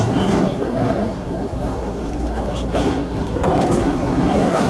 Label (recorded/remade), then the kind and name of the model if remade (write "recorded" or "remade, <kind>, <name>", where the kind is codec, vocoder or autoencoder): remade, codec, SNAC